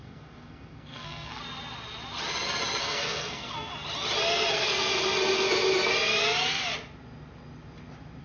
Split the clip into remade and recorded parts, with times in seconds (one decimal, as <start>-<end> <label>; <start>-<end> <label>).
0.0-1.4 remade; 1.4-2.8 recorded; 2.8-3.7 remade; 3.7-4.5 recorded; 4.5-4.9 remade; 4.9-8.2 recorded